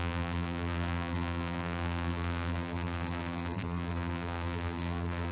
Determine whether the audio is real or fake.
fake